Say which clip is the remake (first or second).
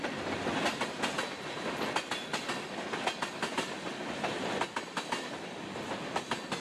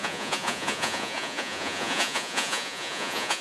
second